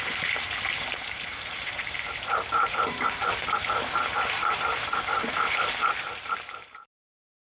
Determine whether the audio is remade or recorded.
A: remade